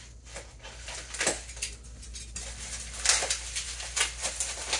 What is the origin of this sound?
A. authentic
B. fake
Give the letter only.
A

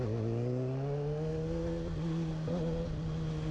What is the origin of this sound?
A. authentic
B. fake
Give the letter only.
A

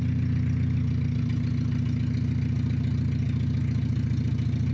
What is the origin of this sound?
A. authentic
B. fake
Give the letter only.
A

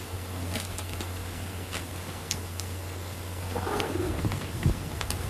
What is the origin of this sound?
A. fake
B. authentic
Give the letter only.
A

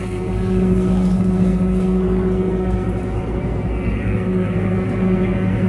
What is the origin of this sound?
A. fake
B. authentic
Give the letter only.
A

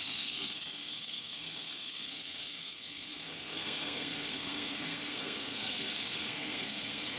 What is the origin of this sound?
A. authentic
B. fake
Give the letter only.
B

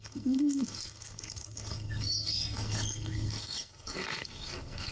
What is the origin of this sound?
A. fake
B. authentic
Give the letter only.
A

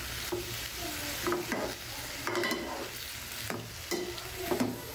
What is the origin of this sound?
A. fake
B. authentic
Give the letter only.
B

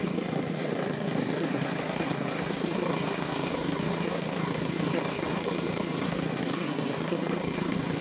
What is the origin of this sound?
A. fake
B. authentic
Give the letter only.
A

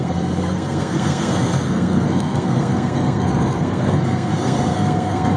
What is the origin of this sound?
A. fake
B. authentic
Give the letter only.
A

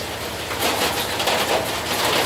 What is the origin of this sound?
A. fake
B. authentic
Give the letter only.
B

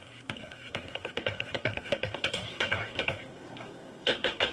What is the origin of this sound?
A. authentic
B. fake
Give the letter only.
B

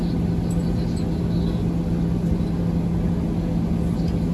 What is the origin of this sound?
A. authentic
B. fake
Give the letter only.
A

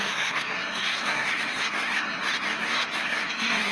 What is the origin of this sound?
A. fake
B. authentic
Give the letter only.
A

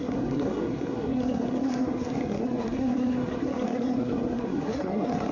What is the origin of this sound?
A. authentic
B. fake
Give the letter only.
B